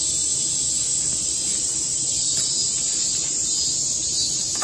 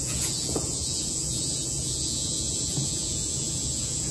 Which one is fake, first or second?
second